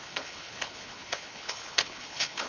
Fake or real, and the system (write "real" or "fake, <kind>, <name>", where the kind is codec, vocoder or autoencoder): fake, codec, HILCodec